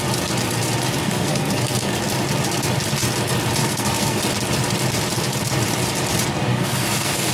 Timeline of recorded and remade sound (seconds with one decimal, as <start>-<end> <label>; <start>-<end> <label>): 0.0-1.0 recorded; 1.0-2.0 remade; 2.0-3.6 recorded; 3.6-4.2 remade; 4.2-6.5 recorded; 6.5-7.3 remade